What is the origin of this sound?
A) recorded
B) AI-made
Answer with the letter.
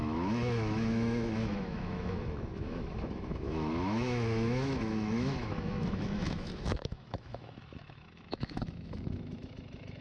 B